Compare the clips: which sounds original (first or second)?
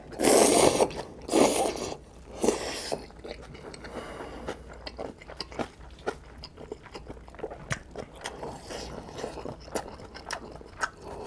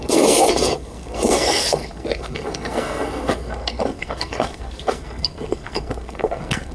first